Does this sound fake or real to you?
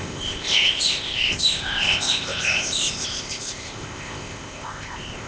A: fake